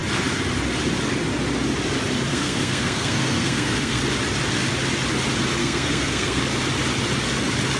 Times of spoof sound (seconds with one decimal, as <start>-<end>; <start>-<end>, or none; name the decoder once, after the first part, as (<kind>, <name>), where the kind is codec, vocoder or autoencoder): 2.3-4.0 (codec, SNAC); 5.6-6.4